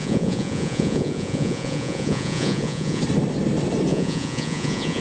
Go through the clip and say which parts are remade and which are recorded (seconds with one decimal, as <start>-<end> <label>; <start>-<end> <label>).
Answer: 0.0-3.0 remade; 3.0-3.9 recorded; 3.9-5.0 remade